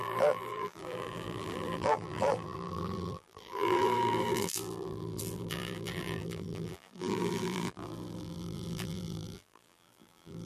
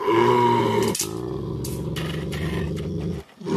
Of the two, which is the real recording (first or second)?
second